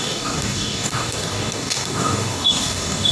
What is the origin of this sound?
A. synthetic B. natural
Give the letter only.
A